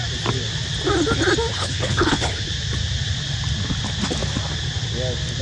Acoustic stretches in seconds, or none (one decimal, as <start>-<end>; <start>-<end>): 0.0-1.5; 2.5-5.4